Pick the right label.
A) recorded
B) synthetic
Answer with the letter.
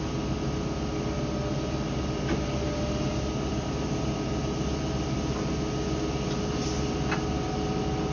A